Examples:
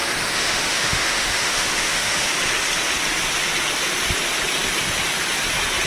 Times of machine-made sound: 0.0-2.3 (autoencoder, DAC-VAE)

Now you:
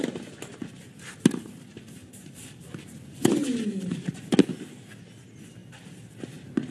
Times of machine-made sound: none

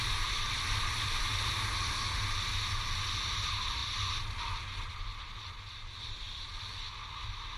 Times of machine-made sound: none

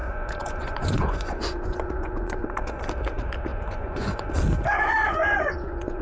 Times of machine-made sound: 0.0-2.8 (vocoder, Vocos); 3.5-4.3; 5.2-6.0

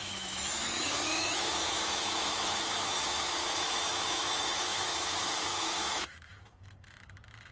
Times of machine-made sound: 0.0-7.5 (autoencoder, DAC-VAE)

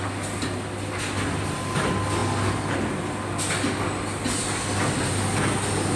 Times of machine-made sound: none

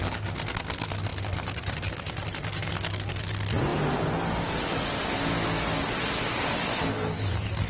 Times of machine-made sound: 1.1-2.7 (vocoder, BigVGAN v2)

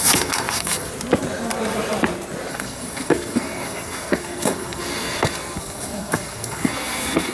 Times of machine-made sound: 0.0-0.9 (codec, SNAC); 2.5-7.3